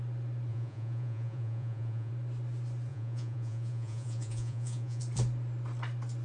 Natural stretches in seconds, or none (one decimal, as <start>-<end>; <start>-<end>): 0.0-0.5; 2.1-2.9; 5.0-6.2